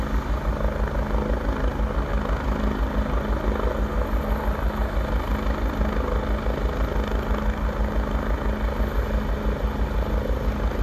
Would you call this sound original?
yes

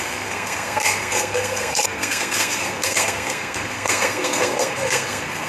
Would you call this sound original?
no